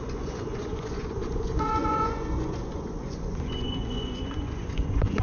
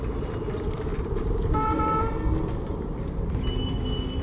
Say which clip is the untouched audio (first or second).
second